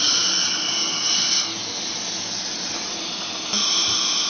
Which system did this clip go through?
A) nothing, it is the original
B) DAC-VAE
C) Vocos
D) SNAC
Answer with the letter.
A